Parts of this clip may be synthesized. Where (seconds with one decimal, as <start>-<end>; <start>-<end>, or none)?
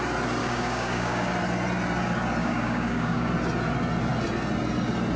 0.4-1.3; 2.4-3.3